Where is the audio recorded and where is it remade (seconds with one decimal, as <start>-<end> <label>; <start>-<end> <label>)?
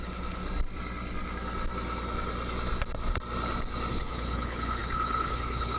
0.0-0.4 remade; 0.4-3.9 recorded; 3.9-5.8 remade